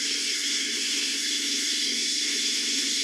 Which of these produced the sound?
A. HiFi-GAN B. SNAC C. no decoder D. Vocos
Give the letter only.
B